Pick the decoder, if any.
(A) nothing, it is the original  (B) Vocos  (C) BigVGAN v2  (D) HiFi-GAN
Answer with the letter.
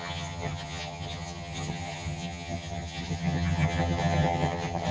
D